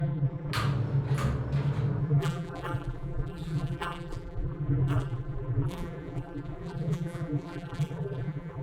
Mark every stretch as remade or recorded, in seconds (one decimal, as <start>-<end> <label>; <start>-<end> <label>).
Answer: 0.0-0.5 remade; 0.5-2.0 recorded; 2.0-8.6 remade